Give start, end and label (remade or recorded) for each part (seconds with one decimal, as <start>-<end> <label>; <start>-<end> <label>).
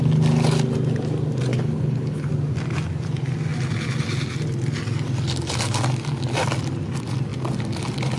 0.0-1.5 recorded; 1.5-2.3 remade; 2.3-8.2 recorded